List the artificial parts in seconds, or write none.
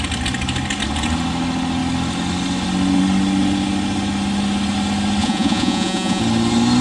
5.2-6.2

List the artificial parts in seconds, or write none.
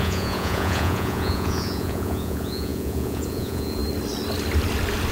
0.0-3.8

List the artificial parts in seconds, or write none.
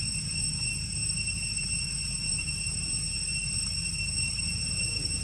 0.0-3.4; 4.4-5.2